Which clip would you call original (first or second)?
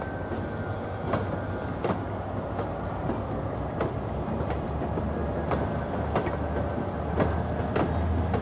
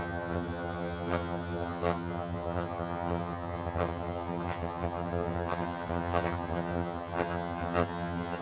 first